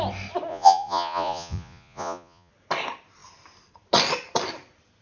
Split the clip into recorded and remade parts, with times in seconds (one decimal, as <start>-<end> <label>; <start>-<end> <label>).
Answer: 0.0-0.5 recorded; 0.5-2.5 remade; 2.5-5.0 recorded